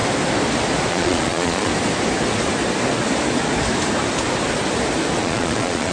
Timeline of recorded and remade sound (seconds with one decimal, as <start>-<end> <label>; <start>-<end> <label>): 0.0-0.9 recorded; 0.9-1.7 remade; 1.7-5.2 recorded; 5.2-5.9 remade